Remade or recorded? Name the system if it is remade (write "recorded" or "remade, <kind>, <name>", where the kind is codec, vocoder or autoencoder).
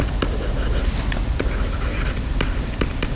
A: recorded